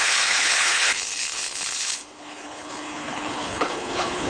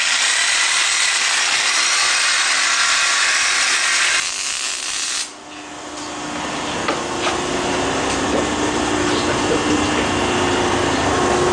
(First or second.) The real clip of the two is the second